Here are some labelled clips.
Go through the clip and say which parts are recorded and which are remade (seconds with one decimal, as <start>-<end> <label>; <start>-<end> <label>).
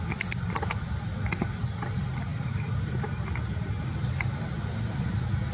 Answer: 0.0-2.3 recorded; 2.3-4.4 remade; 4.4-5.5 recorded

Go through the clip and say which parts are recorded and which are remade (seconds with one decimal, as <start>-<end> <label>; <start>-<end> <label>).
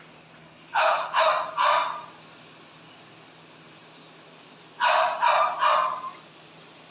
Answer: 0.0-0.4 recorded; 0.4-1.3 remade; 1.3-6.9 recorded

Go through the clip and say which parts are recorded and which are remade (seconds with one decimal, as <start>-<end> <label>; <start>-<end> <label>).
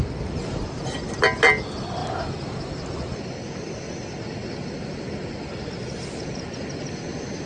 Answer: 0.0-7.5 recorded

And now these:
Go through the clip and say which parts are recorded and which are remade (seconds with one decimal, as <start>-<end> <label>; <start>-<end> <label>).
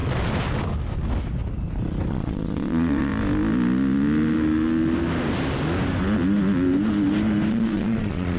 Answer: 0.0-2.1 recorded; 2.1-3.1 remade; 3.1-7.5 recorded; 7.5-8.4 remade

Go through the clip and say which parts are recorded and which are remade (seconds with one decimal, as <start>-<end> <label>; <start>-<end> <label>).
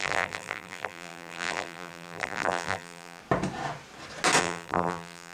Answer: 0.0-3.2 remade; 3.2-4.4 recorded; 4.4-5.3 remade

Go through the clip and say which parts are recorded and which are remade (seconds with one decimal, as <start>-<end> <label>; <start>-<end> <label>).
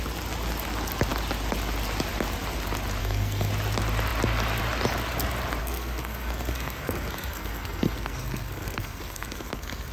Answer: 0.0-3.0 recorded; 3.0-3.5 remade; 3.5-5.6 recorded; 5.6-9.9 remade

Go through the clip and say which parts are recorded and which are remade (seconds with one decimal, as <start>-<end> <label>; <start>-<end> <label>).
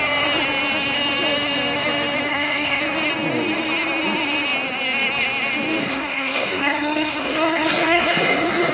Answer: 0.0-2.3 recorded; 2.3-2.8 remade; 2.8-5.8 recorded; 5.8-8.7 remade